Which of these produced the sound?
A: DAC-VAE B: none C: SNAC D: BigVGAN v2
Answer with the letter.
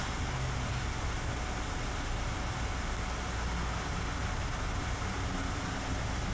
B